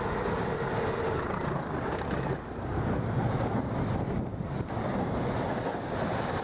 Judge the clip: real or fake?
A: real